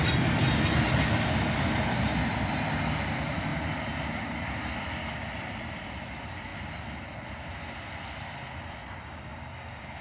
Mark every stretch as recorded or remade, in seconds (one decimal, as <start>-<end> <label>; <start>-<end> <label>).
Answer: 0.0-9.0 recorded; 9.0-10.0 remade